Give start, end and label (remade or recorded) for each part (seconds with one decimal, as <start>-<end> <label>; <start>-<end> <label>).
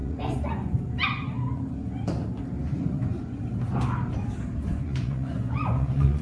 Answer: 0.0-0.7 remade; 0.7-2.7 recorded; 2.7-3.4 remade; 3.4-4.7 recorded; 4.7-6.2 remade